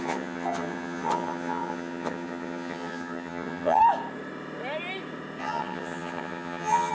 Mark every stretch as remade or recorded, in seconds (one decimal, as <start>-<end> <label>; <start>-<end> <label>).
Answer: 0.0-3.8 remade; 3.8-5.4 recorded; 5.4-6.9 remade

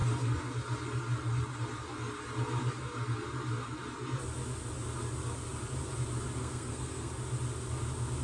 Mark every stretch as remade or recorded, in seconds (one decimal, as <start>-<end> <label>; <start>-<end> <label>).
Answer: 0.0-6.4 recorded; 6.4-7.1 remade; 7.1-8.2 recorded

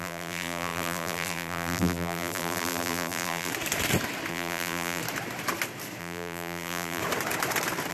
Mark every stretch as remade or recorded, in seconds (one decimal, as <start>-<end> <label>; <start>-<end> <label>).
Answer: 0.0-3.5 remade; 3.5-4.3 recorded; 4.3-5.0 remade; 5.0-6.0 recorded; 6.0-7.0 remade; 7.0-7.9 recorded